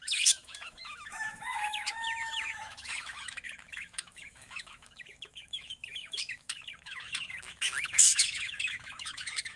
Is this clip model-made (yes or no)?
yes